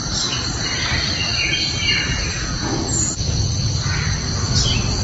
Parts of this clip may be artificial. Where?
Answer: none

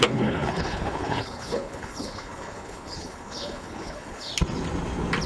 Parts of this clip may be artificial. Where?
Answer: 0.0-4.3 (codec, HILCodec)

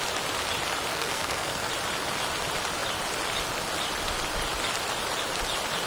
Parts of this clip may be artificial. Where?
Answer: 0.9-1.7 (codec, SNAC)

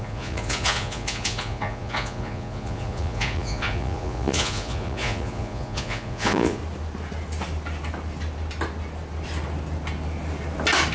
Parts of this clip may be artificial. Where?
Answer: 0.0-6.6 (vocoder, Vocos)

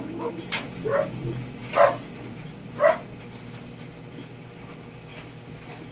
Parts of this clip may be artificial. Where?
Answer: 0.0-2.6 (vocoder, BigVGAN v2); 3.2-5.1

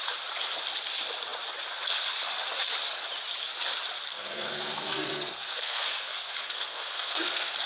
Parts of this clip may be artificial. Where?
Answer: 4.1-7.7 (codec, SNAC)